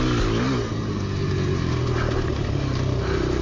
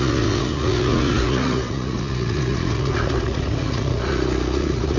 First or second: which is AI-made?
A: second